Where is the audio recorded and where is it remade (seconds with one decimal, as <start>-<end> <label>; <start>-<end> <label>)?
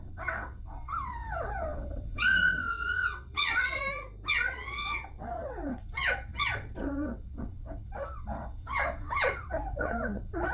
0.0-3.8 remade; 3.8-4.3 recorded; 4.3-10.5 remade